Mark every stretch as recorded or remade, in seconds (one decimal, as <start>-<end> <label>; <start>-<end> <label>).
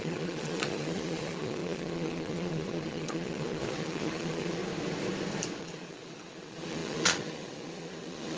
0.0-4.6 remade; 4.6-5.6 recorded; 5.6-8.4 remade